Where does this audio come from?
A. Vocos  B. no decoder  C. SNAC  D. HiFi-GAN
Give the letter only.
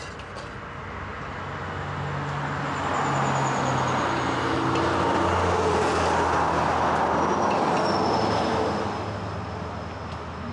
B